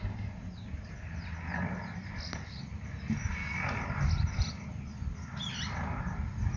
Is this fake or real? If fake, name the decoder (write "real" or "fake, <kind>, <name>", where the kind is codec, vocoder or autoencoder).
real